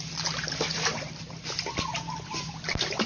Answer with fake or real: real